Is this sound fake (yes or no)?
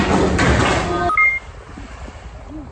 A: no